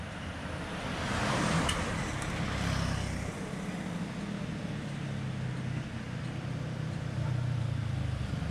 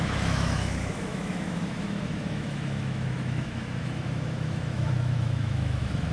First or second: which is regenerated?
second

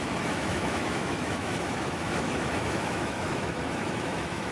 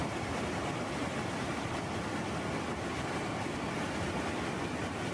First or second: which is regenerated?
first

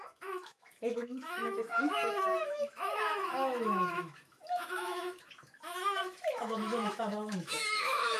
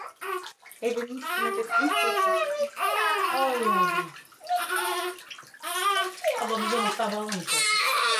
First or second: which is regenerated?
first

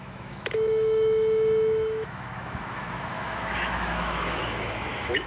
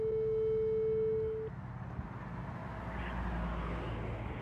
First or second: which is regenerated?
first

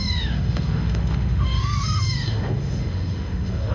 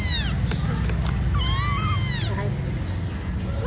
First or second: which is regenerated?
first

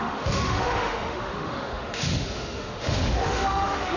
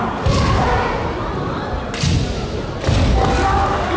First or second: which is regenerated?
first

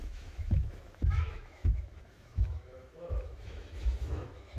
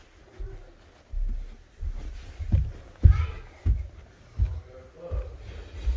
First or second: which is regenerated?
first